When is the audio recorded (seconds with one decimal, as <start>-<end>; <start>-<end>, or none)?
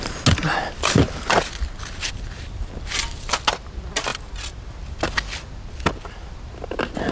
0.0-7.1